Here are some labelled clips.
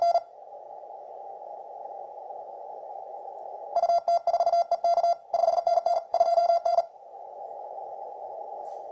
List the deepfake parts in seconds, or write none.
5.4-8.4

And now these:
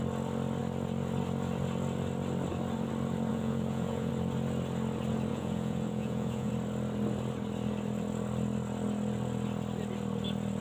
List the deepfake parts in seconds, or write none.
3.3-4.1; 5.3-6.5

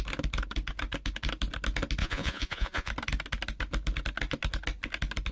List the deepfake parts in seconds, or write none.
2.0-2.9